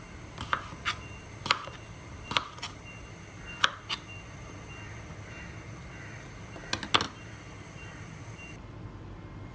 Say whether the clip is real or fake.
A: real